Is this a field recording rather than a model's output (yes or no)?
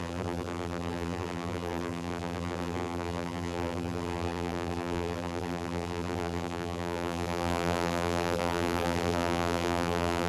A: no